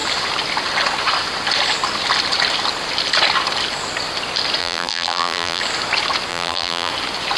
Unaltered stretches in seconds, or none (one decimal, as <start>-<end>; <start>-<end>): 0.0-4.6; 5.6-6.3; 6.9-7.4

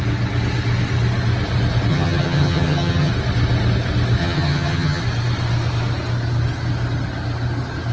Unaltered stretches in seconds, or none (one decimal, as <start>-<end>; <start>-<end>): 0.0-1.9; 3.1-4.2; 5.0-7.9

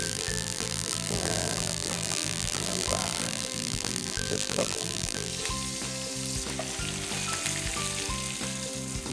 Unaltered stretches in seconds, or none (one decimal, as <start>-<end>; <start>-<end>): 5.3-9.1